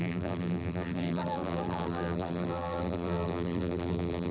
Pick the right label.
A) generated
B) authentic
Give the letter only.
A